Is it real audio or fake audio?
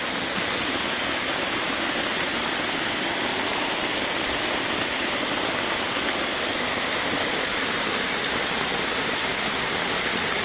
real